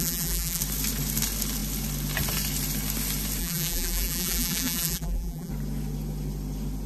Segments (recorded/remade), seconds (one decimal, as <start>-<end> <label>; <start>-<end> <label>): 0.0-0.6 remade; 0.6-3.4 recorded; 3.4-5.5 remade; 5.5-6.9 recorded

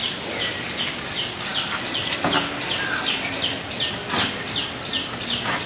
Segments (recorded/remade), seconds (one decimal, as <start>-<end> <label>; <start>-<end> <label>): 0.0-5.7 recorded

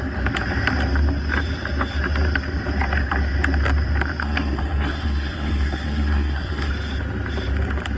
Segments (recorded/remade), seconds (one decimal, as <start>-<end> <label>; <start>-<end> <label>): 0.0-4.2 recorded; 4.2-6.7 remade; 6.7-8.0 recorded

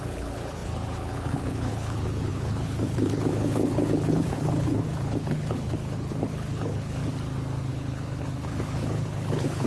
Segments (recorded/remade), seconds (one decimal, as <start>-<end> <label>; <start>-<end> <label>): 0.0-7.0 remade; 7.0-7.7 recorded; 7.7-9.7 remade

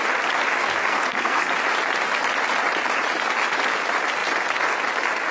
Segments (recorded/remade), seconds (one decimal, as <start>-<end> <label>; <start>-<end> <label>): 0.0-0.8 recorded; 0.8-1.5 remade; 1.5-5.3 recorded

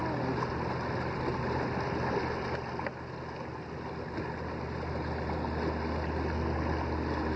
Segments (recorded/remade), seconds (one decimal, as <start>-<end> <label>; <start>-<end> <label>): 0.0-7.4 recorded